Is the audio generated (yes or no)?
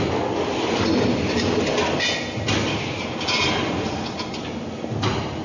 no